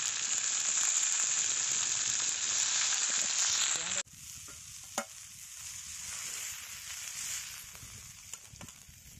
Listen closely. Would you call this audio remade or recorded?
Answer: recorded